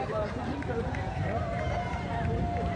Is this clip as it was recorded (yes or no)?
no